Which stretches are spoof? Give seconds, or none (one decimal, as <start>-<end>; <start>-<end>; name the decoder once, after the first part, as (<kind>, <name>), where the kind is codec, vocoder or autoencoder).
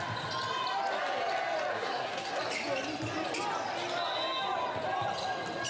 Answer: 1.7-2.4 (codec, SNAC)